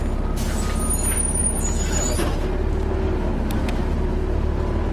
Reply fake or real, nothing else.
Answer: real